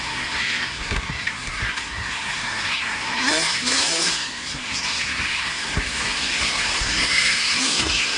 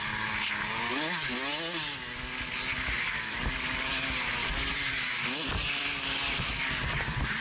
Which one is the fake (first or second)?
first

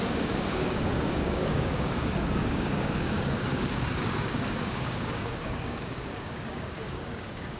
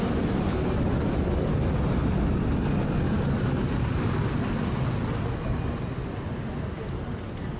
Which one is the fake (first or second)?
first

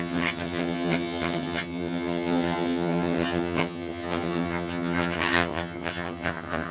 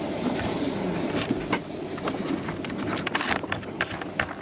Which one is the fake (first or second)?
first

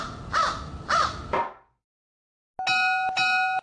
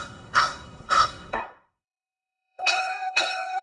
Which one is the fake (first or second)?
second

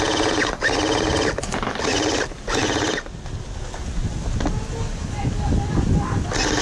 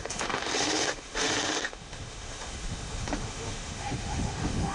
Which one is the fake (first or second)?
second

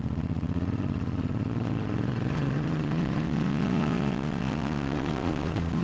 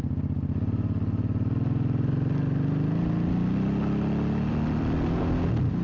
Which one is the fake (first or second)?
first